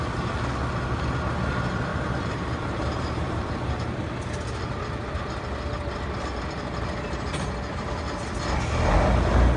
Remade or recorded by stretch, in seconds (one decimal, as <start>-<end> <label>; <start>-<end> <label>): 0.0-1.9 recorded; 1.9-3.5 remade; 3.5-9.6 recorded

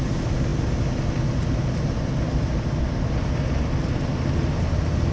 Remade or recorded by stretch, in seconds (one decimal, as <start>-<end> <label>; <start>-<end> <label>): 0.0-5.1 recorded